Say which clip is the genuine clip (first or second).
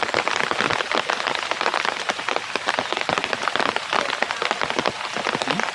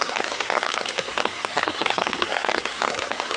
first